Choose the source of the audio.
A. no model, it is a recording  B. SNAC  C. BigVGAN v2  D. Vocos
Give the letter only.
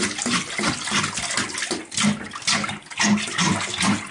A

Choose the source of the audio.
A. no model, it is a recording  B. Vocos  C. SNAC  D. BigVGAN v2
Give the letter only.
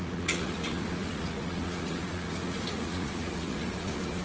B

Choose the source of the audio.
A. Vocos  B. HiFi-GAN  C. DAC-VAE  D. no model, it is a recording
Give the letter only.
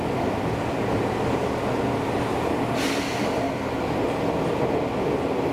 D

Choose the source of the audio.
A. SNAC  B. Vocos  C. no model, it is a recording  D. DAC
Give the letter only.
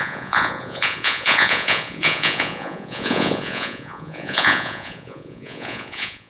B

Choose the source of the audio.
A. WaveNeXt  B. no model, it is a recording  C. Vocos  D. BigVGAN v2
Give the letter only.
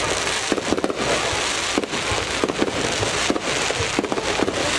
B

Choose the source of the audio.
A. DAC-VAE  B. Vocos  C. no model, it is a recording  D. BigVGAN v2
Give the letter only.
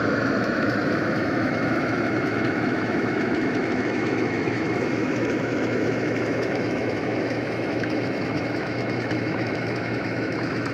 A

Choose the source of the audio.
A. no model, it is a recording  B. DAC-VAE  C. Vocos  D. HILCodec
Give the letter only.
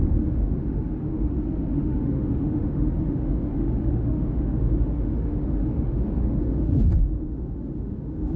B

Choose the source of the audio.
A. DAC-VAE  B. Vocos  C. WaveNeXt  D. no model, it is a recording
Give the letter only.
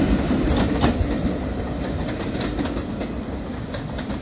D